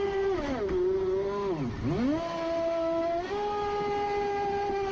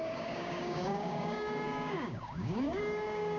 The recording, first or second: first